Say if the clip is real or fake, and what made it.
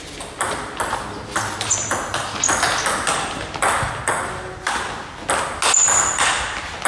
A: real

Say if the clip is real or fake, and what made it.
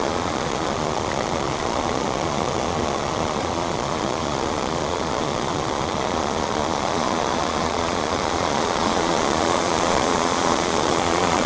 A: fake, vocoder, Vocos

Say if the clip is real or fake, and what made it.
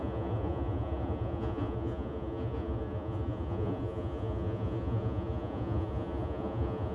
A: fake, vocoder, Vocos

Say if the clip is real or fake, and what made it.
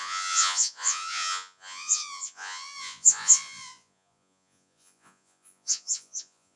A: fake, vocoder, Vocos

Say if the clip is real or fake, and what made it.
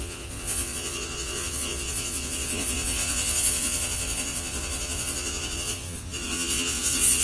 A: fake, vocoder, Vocos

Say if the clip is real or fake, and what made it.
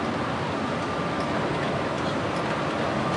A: real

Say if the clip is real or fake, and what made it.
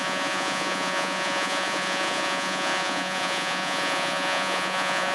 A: fake, vocoder, Vocos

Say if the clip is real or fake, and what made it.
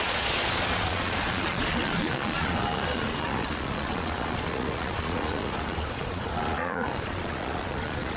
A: fake, vocoder, Vocos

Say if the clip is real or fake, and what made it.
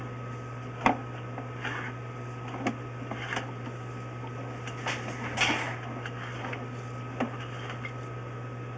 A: real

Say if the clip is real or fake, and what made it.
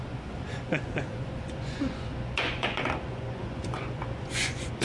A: fake, vocoder, Vocos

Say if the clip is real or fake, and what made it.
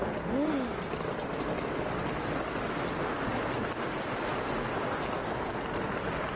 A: real